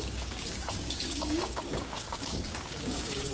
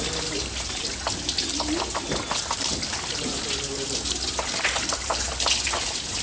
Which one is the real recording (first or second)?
second